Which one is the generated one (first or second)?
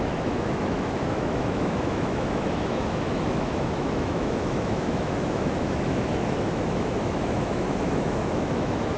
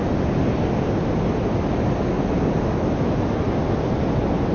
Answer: first